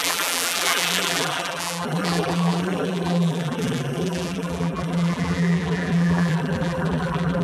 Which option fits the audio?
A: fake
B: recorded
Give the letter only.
A